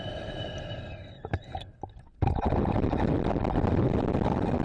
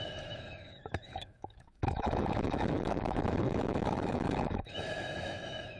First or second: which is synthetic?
second